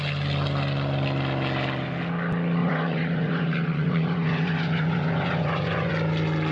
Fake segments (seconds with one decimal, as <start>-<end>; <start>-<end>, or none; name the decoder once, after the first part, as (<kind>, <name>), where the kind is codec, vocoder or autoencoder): 2.6-5.9 (vocoder, Vocos)